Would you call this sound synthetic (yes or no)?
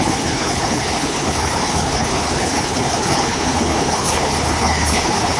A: yes